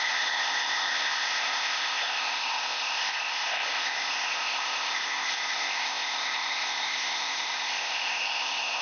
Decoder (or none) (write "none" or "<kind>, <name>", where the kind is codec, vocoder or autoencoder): codec, ZipCodec